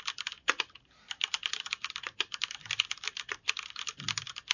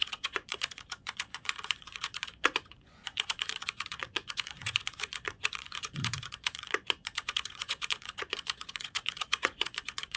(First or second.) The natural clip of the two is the first